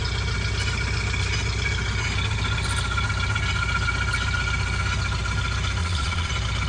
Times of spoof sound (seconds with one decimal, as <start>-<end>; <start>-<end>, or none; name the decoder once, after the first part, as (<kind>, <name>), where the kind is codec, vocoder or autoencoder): 5.8-6.3 (vocoder, Vocos)